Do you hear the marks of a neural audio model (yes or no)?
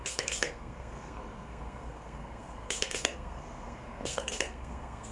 yes